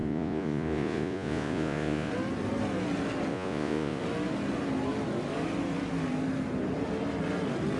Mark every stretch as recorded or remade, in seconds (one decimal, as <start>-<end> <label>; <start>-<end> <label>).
0.0-2.1 remade; 2.1-3.3 recorded; 3.3-4.0 remade; 4.0-7.8 recorded

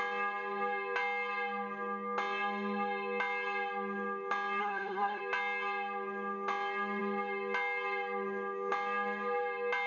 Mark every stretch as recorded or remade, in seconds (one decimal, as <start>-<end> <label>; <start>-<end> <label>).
0.0-4.6 recorded; 4.6-5.2 remade; 5.2-9.9 recorded

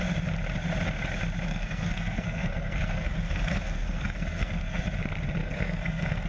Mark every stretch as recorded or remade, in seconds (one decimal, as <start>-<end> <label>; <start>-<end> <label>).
0.0-1.5 recorded; 1.5-4.8 remade; 4.8-5.4 recorded; 5.4-6.3 remade

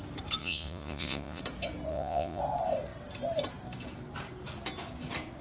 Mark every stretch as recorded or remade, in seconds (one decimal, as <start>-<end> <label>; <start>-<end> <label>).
0.0-0.4 recorded; 0.4-1.4 remade; 1.4-1.9 recorded; 1.9-2.4 remade; 2.4-5.4 recorded

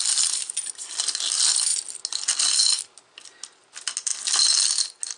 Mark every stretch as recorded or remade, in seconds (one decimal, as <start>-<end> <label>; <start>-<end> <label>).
0.0-5.2 recorded

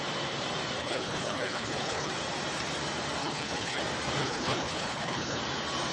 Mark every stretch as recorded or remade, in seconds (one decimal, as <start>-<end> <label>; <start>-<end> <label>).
0.0-0.8 recorded; 0.8-2.1 remade; 2.1-3.2 recorded; 3.2-3.8 remade; 3.8-4.2 recorded; 4.2-5.4 remade; 5.4-5.9 recorded